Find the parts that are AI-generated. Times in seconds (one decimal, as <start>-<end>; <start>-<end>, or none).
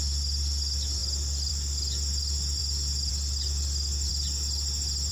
none